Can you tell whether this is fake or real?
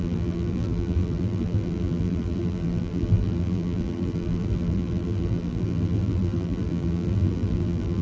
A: fake